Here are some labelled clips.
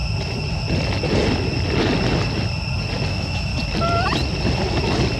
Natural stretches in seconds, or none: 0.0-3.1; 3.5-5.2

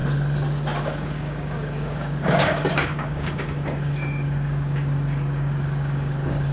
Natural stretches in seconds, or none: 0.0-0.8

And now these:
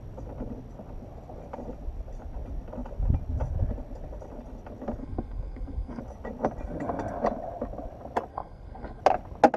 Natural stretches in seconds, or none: 0.0-5.0; 6.0-8.3; 9.0-9.6

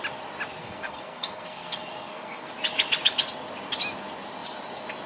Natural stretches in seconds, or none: 0.0-0.6; 2.5-5.1

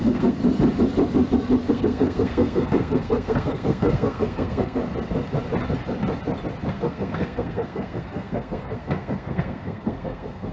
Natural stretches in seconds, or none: 0.4-1.7; 4.8-6.7

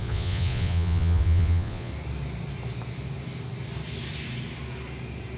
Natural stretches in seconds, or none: 1.9-5.4

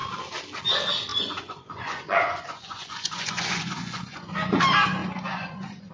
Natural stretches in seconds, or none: 0.0-1.1; 4.6-5.0

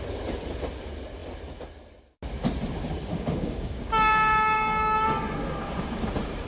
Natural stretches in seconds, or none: 0.0-3.1; 6.1-6.5